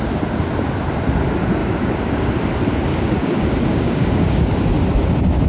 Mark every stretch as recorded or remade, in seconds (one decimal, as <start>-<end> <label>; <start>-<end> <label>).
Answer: 0.0-1.6 recorded; 1.6-2.3 remade; 2.3-2.9 recorded; 2.9-4.5 remade; 4.5-5.5 recorded